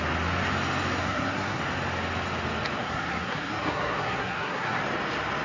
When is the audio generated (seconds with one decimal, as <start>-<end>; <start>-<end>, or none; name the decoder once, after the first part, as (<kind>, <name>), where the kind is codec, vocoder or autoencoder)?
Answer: 1.0-1.6 (codec, SNAC); 2.8-4.8